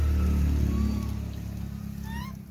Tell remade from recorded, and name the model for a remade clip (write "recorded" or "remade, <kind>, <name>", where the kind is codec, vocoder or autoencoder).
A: recorded